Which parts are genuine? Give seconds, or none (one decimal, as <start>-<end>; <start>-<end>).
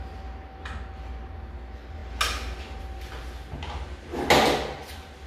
0.0-5.3